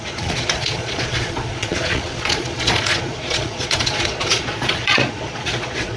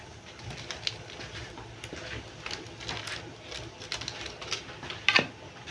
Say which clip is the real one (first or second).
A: second